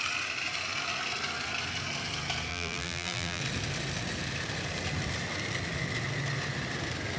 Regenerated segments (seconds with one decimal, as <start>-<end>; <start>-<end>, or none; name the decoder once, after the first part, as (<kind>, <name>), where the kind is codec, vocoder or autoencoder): 2.5-3.4 (vocoder, BigVGAN v2)